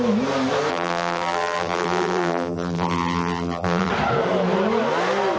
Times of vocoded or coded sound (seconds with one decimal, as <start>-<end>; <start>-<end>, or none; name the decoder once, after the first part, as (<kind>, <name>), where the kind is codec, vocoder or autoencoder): 0.7-3.9 (vocoder, BigVGAN v2)